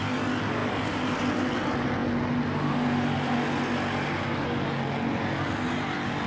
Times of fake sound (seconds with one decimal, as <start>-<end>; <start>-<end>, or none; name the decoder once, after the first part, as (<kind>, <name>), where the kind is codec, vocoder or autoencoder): none